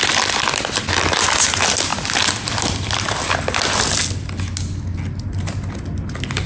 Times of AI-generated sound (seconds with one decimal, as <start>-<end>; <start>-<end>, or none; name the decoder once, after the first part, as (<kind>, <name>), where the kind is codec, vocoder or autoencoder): none